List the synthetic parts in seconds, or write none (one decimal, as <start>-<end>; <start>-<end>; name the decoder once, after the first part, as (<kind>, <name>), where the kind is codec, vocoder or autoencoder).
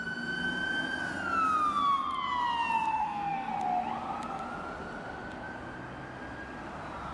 2.9-3.5 (codec, SNAC)